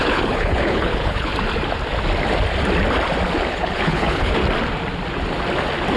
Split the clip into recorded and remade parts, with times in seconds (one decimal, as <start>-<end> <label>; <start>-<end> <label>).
0.0-1.3 remade; 1.3-3.5 recorded; 3.5-4.4 remade; 4.4-6.0 recorded